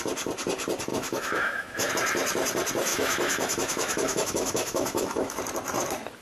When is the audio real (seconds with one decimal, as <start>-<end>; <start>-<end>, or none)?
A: 0.0-0.9; 1.9-2.9; 5.4-6.2